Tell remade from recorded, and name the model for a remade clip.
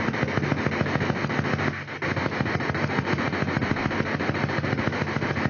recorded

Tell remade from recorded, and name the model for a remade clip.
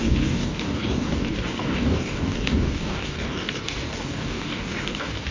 remade, codec, DAC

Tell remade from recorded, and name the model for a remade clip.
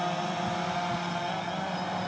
recorded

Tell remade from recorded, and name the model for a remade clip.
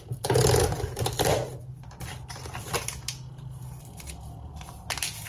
recorded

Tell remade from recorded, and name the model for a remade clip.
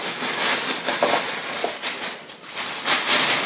recorded